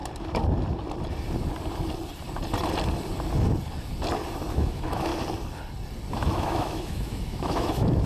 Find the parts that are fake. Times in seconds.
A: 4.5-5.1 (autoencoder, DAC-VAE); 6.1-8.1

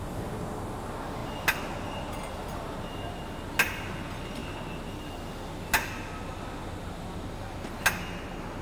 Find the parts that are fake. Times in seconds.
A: none

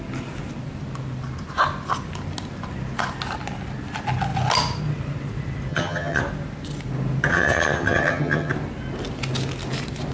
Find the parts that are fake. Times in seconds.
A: 5.7-6.2 (vocoder, HiFi-GAN); 7.3-8.5

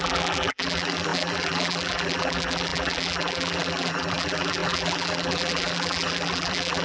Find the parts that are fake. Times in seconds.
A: 0.0-6.8 (vocoder, BigVGAN v2)

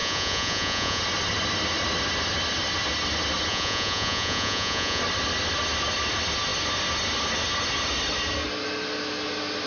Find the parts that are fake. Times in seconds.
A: 0.0-1.0 (vocoder, Vocos); 3.5-5.0